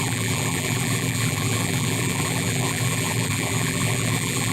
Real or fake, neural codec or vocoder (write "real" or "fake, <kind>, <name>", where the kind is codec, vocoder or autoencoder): fake, vocoder, BigVGAN v2